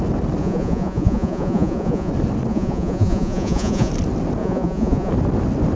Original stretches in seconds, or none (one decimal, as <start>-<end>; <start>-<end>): 0.0-0.4; 2.1-2.5; 3.9-4.4; 5.1-5.8